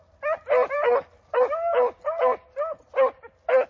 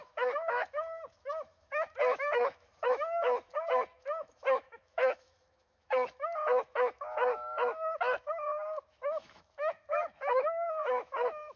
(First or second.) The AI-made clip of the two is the second